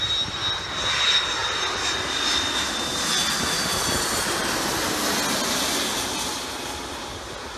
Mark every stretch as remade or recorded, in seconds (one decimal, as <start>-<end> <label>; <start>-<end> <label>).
0.0-7.6 recorded